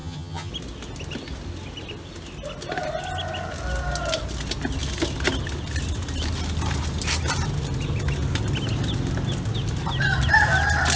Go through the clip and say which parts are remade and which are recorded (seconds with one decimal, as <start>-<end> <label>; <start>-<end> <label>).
0.0-0.5 remade; 0.5-10.9 recorded